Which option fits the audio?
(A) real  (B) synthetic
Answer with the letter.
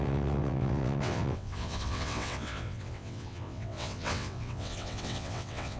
B